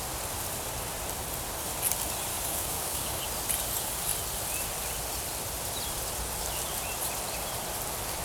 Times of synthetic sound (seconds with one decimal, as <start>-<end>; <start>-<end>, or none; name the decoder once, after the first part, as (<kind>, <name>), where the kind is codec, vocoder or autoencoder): 2.3-3.2 (codec, DAC)